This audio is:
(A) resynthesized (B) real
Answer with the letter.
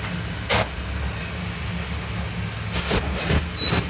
B